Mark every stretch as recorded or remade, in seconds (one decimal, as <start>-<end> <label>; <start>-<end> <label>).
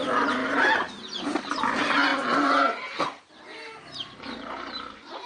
0.0-0.4 recorded; 0.4-1.6 remade; 1.6-5.3 recorded